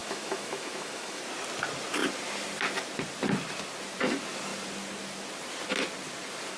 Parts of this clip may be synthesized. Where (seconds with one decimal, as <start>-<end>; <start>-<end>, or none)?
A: 0.0-1.2